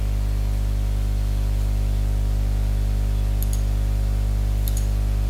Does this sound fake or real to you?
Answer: real